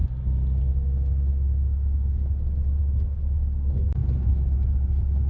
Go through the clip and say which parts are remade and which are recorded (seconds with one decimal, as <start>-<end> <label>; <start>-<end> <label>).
0.0-5.3 recorded